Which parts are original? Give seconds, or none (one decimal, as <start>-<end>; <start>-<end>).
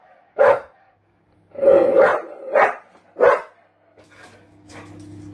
2.1-4.0